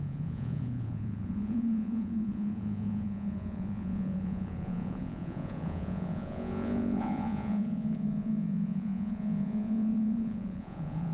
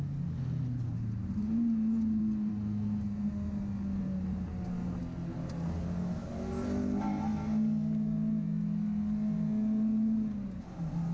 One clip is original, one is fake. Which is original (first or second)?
second